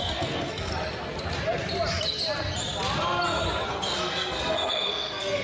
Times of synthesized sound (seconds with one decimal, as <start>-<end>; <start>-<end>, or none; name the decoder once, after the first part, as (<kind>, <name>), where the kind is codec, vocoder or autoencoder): 0.0-0.7 (codec, SNAC); 3.7-5.4